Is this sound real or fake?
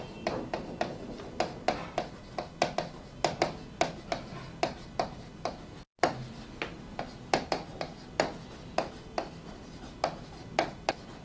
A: real